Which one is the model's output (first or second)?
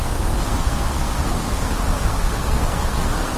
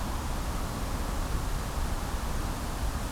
first